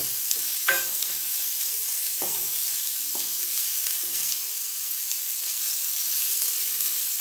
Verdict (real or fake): fake